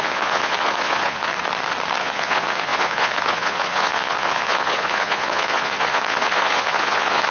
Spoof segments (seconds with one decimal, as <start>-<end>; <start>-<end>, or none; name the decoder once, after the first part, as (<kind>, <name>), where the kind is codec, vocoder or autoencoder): 0.0-1.3 (vocoder, Vocos); 2.0-7.3